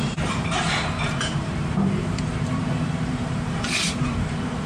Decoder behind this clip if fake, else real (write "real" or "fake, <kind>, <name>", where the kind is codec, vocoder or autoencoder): fake, vocoder, BigVGAN v2